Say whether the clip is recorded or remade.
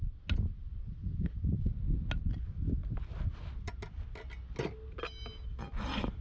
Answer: recorded